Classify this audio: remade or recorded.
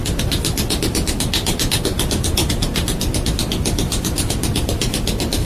recorded